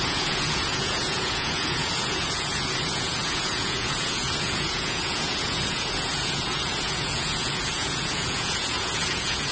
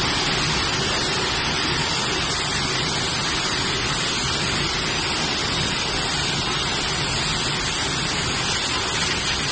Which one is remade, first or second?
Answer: first